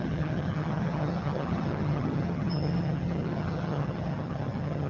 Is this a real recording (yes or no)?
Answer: no